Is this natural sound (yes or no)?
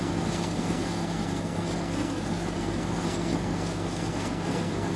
no